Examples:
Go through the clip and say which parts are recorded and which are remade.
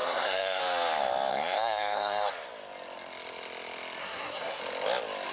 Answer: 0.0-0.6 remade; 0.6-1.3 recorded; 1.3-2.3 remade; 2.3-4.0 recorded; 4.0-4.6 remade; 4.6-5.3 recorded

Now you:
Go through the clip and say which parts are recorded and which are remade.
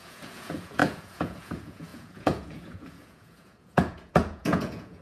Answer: 0.0-5.0 remade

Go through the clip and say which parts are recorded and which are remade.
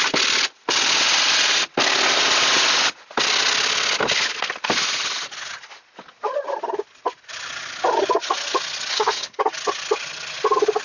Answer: 0.0-8.9 recorded; 8.9-9.4 remade; 9.4-10.8 recorded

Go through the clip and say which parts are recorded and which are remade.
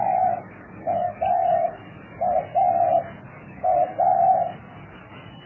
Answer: 0.0-1.8 remade; 1.8-3.3 recorded; 3.3-3.7 remade; 3.7-4.8 recorded; 4.8-5.5 remade